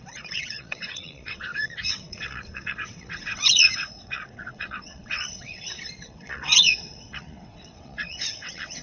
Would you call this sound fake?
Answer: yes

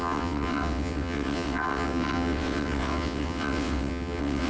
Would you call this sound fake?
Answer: yes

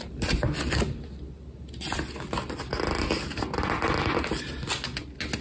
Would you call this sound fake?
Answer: no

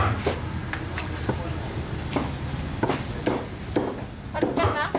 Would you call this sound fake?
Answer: no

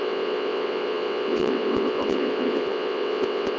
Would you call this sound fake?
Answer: yes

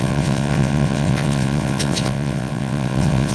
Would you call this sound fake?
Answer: yes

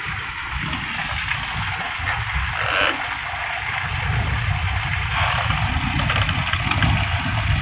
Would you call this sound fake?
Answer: no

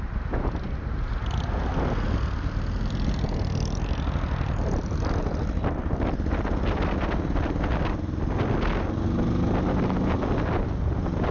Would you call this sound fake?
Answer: no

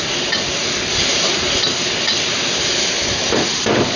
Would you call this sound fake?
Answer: no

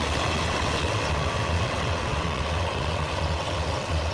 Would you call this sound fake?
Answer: yes